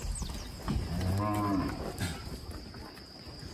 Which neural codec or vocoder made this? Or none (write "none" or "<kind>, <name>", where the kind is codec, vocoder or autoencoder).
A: none